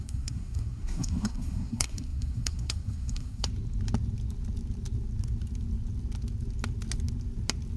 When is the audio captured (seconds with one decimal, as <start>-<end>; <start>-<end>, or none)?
3.5-7.8